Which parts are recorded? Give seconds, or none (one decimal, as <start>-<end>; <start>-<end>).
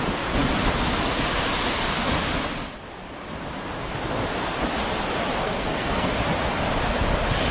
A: 0.0-5.4; 6.1-7.5